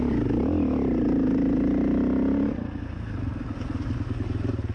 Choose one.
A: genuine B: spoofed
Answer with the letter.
A